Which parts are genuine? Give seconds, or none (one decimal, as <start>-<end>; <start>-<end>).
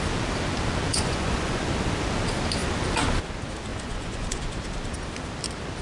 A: 0.0-0.9; 1.6-3.7; 4.4-5.8